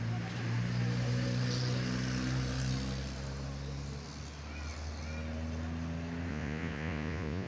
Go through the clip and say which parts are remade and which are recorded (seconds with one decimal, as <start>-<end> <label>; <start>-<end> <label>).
0.0-6.3 recorded; 6.3-7.5 remade

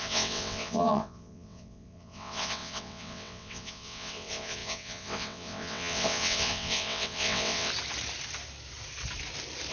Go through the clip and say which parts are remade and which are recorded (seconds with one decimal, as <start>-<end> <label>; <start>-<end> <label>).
0.0-7.7 remade; 7.7-9.7 recorded

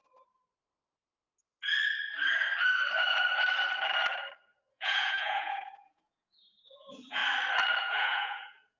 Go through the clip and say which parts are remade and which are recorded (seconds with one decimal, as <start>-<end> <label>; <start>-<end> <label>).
0.0-4.7 recorded; 4.7-7.2 remade; 7.2-7.8 recorded; 7.8-8.8 remade

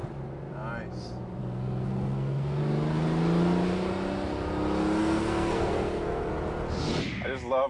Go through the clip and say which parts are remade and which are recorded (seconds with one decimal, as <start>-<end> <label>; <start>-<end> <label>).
0.0-1.4 recorded; 1.4-2.6 remade; 2.6-5.0 recorded; 5.0-6.3 remade; 6.3-7.7 recorded

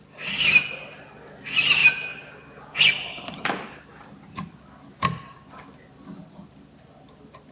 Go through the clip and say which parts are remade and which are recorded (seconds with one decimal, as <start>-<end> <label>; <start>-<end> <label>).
0.0-7.5 recorded